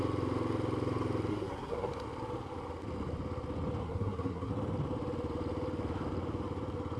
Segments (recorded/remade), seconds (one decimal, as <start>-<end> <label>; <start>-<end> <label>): 0.0-1.3 recorded; 1.3-1.9 remade; 1.9-3.8 recorded; 3.8-4.5 remade; 4.5-7.0 recorded